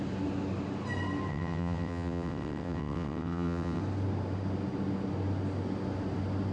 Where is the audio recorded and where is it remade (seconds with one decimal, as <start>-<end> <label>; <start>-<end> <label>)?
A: 0.0-1.3 recorded; 1.3-3.8 remade; 3.8-6.5 recorded

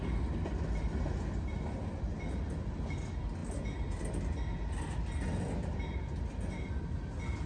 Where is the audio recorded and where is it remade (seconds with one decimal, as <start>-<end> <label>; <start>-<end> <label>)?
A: 0.0-7.5 recorded

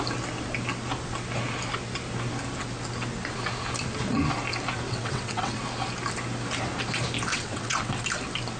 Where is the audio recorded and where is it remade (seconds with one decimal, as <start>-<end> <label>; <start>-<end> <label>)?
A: 0.0-4.9 recorded; 4.9-5.6 remade; 5.6-7.3 recorded; 7.3-8.0 remade; 8.0-8.6 recorded

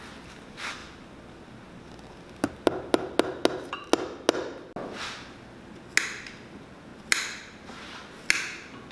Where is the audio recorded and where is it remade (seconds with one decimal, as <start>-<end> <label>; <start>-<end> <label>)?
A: 0.0-8.9 recorded

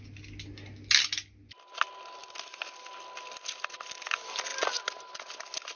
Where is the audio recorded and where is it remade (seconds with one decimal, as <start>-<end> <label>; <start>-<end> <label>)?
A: 0.0-5.8 recorded